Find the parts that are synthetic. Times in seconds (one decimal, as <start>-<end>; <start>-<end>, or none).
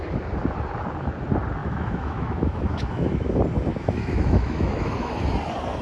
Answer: 1.6-3.3; 3.7-5.1